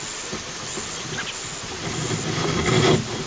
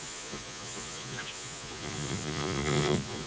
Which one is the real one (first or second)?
first